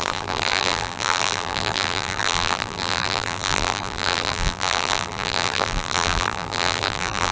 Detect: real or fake fake